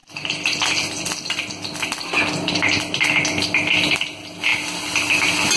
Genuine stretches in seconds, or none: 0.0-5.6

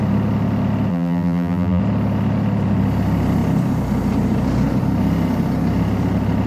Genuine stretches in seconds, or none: 0.0-0.9; 1.8-6.5

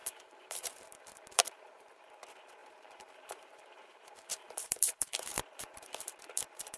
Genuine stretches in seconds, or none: 2.1-2.6

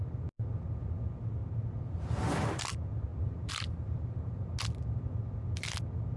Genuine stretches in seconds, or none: 0.0-3.1; 4.4-6.2

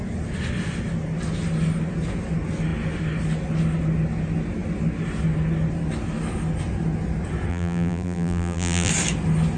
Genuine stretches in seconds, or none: 0.0-7.5; 8.9-9.6

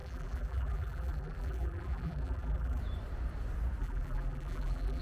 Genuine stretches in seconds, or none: 2.8-3.8